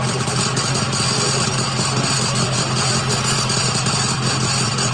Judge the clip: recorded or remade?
recorded